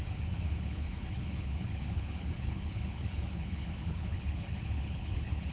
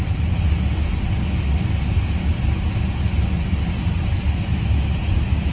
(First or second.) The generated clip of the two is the first